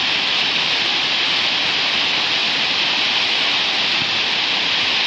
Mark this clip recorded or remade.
recorded